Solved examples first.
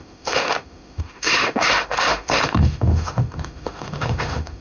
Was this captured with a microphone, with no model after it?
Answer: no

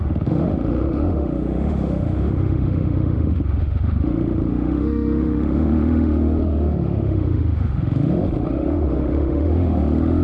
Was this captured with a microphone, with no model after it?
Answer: no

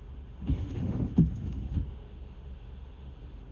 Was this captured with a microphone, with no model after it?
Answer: no